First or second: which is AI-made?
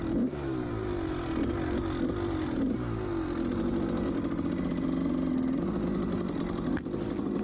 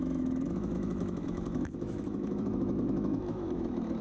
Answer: second